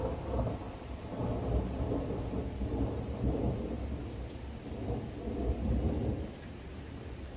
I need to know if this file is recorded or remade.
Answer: recorded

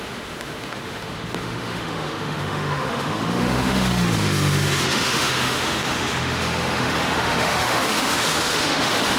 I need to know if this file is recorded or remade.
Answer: remade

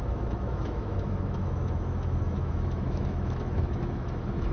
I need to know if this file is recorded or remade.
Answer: remade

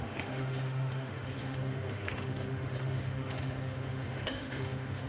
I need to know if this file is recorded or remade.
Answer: remade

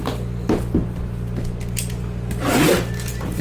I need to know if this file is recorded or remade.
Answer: recorded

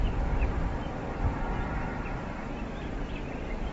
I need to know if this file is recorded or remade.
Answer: recorded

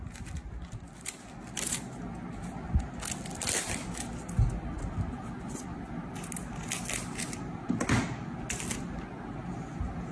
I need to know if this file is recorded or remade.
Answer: recorded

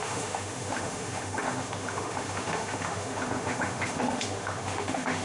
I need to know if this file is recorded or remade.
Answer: remade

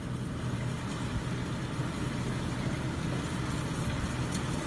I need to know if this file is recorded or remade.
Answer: recorded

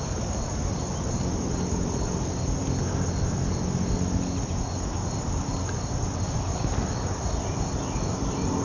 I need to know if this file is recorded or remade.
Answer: recorded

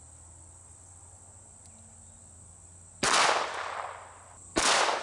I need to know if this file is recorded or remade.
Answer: recorded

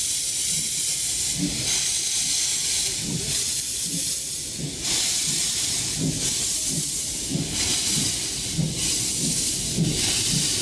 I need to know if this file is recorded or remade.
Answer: recorded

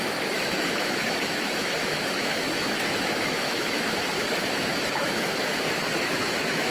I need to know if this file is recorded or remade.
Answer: remade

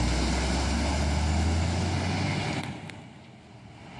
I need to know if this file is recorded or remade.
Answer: recorded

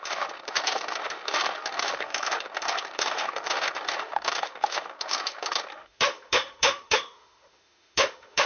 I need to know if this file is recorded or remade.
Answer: remade